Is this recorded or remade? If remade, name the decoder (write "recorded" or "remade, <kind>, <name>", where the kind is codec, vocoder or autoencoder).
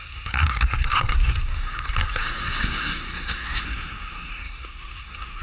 remade, codec, SNAC